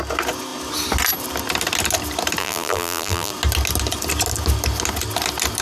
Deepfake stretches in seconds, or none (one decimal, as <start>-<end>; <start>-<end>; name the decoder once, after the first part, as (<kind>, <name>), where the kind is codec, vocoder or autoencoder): 2.4-3.3 (vocoder, BigVGAN v2)